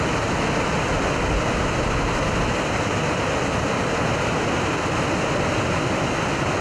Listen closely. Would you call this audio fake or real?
real